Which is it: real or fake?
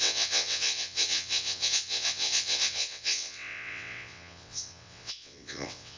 fake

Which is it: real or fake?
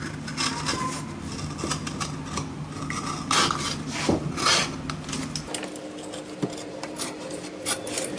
real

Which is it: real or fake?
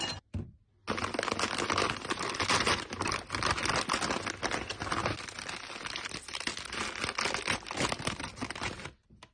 real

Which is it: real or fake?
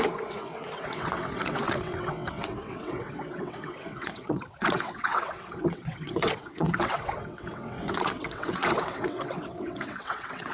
fake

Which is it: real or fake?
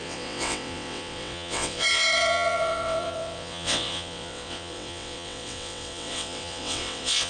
fake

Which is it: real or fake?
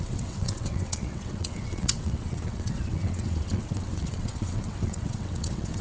fake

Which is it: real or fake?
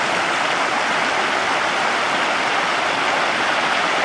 real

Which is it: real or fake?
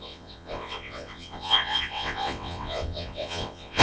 fake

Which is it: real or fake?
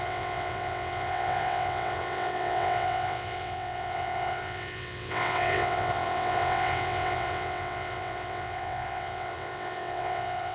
fake